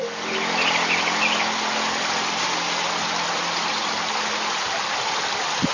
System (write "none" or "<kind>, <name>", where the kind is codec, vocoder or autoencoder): none